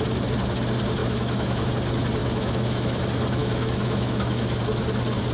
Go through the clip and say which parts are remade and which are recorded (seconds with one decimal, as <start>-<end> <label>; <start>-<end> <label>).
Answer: 0.0-1.0 recorded; 1.0-1.7 remade; 1.7-2.2 recorded; 2.2-3.0 remade; 3.0-3.4 recorded; 3.4-4.6 remade; 4.6-5.3 recorded